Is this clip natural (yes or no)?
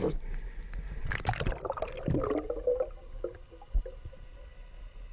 yes